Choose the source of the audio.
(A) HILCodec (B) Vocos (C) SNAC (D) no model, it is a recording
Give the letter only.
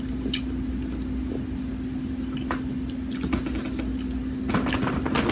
D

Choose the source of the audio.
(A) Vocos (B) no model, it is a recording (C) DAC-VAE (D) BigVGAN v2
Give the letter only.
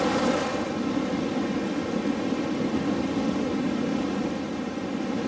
B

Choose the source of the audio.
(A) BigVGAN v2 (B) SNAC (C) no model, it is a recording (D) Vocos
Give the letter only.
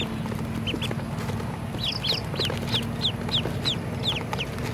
C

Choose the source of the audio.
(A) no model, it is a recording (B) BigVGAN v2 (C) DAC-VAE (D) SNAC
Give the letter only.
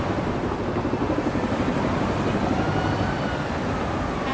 B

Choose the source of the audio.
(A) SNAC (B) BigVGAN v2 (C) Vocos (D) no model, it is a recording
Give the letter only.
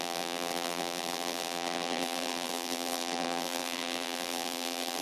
B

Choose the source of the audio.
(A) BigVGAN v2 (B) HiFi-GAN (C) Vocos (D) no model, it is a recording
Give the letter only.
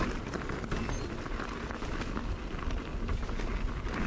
D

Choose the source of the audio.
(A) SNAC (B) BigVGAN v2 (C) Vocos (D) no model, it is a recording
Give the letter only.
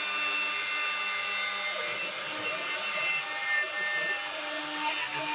D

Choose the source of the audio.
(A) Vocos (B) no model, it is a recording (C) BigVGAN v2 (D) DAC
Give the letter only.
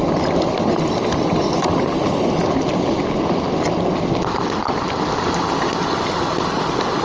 B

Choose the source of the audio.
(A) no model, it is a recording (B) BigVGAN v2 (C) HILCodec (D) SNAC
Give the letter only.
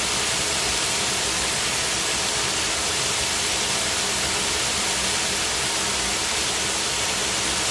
A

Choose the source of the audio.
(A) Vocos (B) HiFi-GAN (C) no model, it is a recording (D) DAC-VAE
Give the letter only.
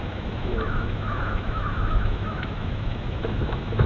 D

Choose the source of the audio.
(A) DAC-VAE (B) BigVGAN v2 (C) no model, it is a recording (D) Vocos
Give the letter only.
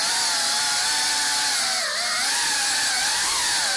C